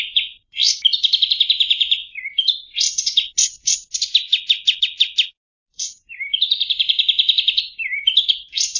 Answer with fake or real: real